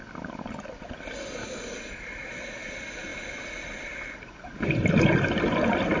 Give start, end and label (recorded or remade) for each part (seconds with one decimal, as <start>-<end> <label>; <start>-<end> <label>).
0.0-6.0 recorded